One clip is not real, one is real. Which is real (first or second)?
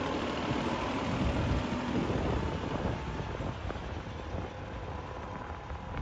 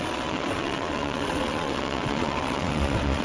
first